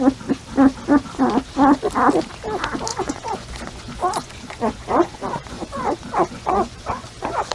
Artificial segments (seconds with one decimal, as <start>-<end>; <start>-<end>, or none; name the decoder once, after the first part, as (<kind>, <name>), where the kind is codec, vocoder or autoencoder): 2.9-7.5 (vocoder, Vocos)